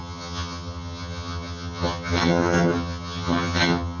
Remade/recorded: remade